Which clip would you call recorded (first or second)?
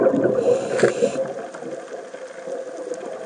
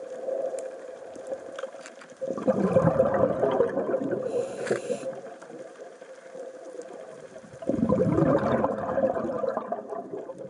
first